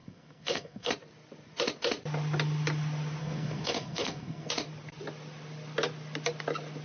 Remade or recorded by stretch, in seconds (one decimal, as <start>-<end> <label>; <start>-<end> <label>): 0.0-0.9 remade; 0.9-3.2 recorded; 3.2-4.5 remade; 4.5-6.8 recorded